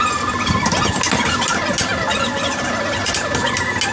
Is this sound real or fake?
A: real